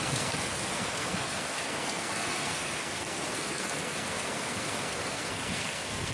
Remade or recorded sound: remade